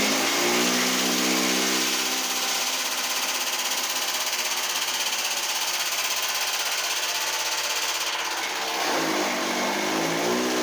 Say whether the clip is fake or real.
real